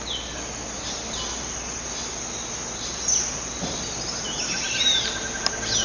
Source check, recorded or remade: recorded